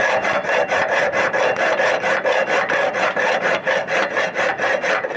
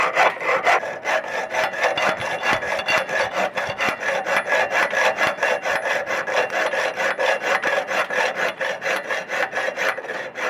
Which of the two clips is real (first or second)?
second